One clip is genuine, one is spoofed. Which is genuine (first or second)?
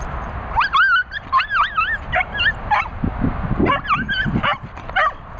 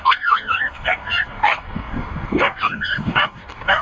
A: first